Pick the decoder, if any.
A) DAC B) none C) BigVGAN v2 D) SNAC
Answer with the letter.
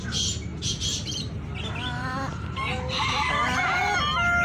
B